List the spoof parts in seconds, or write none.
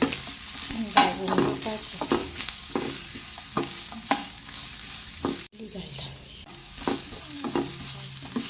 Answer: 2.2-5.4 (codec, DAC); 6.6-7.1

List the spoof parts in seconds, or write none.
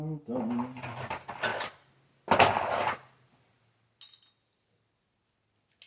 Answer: none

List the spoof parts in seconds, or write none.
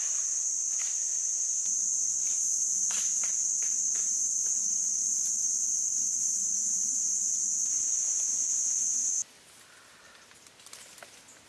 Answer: none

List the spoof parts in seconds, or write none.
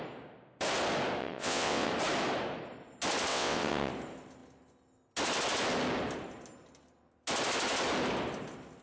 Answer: 1.2-1.9 (vocoder, WaveNeXt); 3.3-3.9